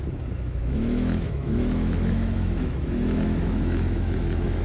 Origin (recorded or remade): remade